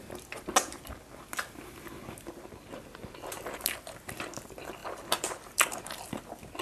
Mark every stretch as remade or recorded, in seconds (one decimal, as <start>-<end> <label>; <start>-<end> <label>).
0.0-4.8 recorded; 4.8-6.6 remade